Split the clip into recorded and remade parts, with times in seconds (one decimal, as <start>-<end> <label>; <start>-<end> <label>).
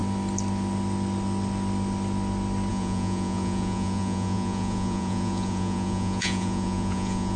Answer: 0.0-2.7 recorded; 2.7-7.4 remade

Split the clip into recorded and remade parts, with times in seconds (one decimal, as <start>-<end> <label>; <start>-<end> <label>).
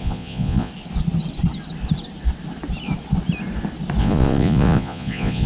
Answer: 0.0-0.7 remade; 0.7-4.0 recorded; 4.0-5.5 remade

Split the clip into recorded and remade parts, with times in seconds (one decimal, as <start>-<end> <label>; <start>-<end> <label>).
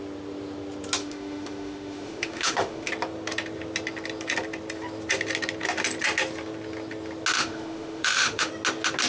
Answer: 0.0-1.0 recorded; 1.0-2.9 remade; 2.9-7.4 recorded; 7.4-8.5 remade; 8.5-9.1 recorded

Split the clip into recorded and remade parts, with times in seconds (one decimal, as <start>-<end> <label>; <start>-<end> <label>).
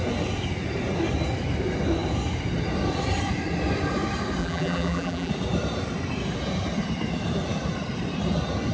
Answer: 0.0-4.4 recorded; 4.4-5.3 remade; 5.3-8.7 recorded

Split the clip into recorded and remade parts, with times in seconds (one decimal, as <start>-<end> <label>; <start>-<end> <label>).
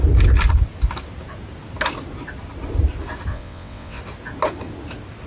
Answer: 0.0-3.3 recorded; 3.3-4.0 remade; 4.0-5.3 recorded